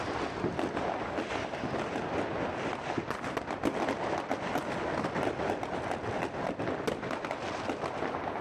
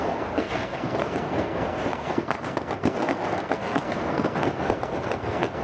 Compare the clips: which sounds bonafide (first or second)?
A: first